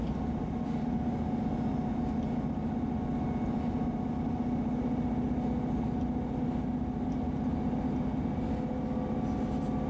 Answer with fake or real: real